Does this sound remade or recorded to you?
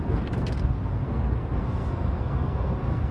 remade